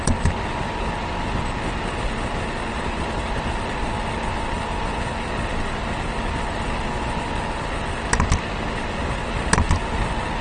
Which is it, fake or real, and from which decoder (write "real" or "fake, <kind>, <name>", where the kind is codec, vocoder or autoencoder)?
real